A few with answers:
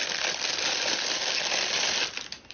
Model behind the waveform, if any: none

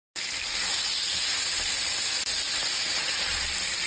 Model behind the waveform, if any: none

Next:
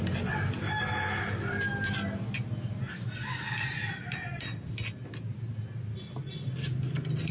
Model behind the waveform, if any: none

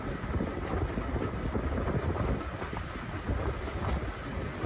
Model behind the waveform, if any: none